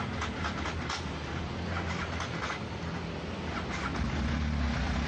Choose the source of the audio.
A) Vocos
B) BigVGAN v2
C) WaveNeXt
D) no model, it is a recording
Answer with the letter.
D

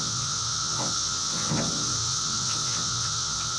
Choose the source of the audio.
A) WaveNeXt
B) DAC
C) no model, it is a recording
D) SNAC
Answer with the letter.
A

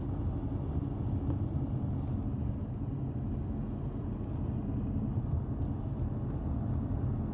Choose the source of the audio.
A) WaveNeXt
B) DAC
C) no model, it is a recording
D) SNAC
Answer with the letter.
C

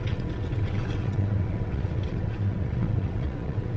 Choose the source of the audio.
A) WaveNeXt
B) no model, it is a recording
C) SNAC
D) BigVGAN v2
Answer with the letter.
A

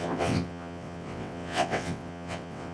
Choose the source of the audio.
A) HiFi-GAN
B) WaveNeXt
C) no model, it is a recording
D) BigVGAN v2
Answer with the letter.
B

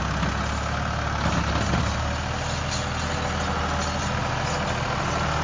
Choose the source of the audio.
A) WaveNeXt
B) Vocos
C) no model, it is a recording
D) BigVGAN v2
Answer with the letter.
C